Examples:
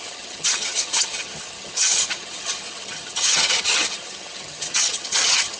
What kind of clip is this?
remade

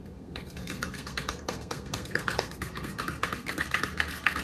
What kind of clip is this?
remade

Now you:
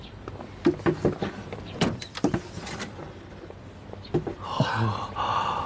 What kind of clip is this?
recorded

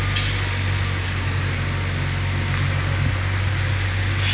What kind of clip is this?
recorded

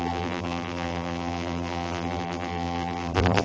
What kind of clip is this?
remade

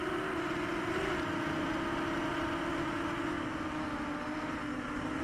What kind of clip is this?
recorded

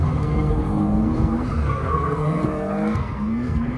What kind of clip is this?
remade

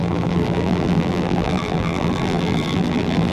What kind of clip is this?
remade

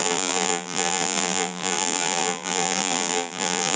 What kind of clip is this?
remade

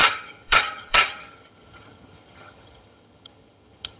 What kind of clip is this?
remade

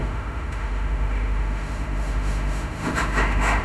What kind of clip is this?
remade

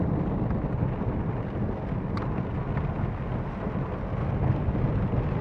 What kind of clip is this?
recorded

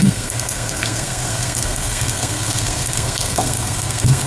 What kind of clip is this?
remade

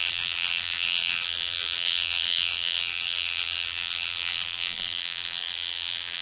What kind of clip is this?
remade